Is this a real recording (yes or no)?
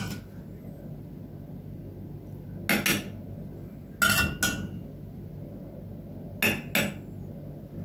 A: yes